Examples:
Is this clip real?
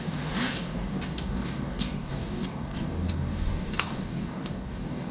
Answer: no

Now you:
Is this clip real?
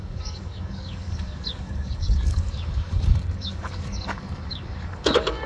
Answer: no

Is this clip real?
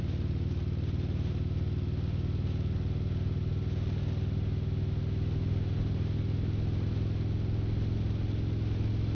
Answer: yes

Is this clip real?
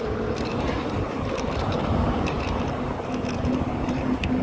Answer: no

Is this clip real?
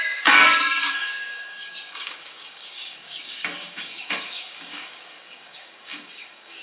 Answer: no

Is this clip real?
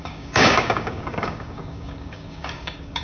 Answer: no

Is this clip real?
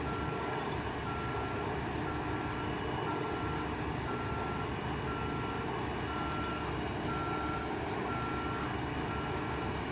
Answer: yes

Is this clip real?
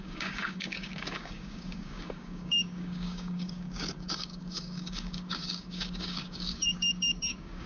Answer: no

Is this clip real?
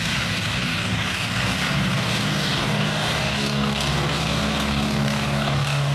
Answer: no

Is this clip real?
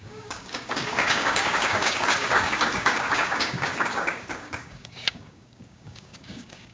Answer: no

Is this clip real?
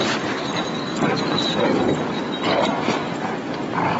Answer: yes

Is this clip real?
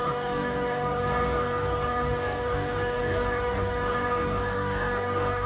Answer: no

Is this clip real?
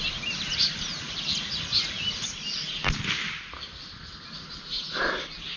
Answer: yes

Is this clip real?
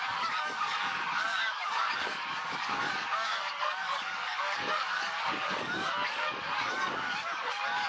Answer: no